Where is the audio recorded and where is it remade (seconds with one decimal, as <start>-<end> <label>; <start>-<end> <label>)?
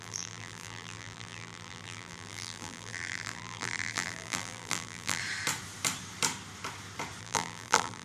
0.0-5.2 remade; 5.2-7.2 recorded; 7.2-8.0 remade